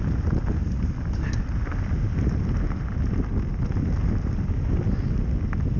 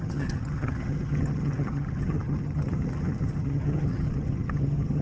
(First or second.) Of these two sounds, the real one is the first